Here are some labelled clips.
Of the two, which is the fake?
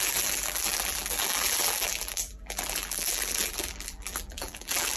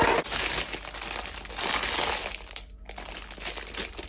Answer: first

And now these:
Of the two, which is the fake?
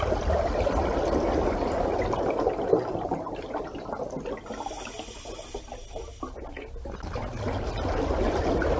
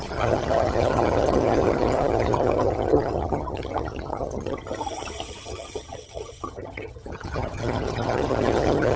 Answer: second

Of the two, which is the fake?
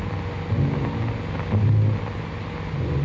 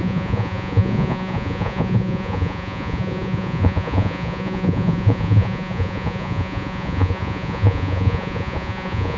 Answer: second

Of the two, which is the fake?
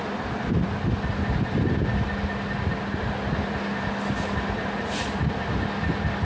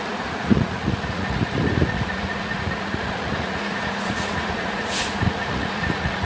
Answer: second